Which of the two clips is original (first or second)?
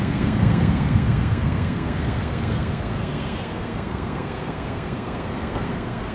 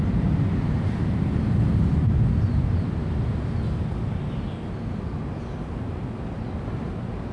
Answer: second